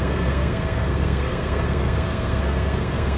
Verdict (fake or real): fake